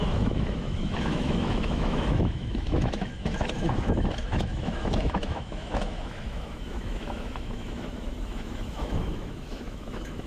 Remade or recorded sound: remade